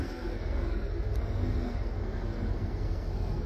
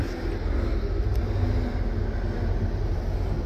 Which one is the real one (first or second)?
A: second